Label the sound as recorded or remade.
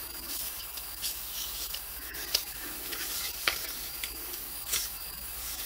remade